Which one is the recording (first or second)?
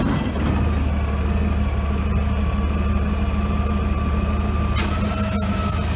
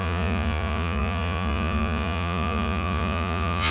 first